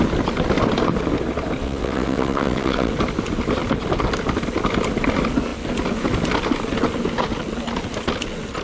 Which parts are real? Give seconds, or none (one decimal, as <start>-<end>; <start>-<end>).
0.0-1.6; 2.9-8.6